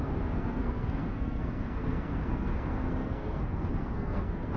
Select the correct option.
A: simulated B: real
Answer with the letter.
A